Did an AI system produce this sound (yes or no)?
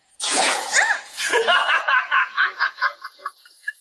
yes